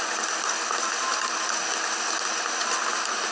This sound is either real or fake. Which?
real